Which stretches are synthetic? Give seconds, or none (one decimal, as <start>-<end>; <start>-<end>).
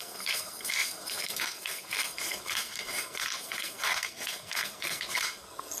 0.0-5.8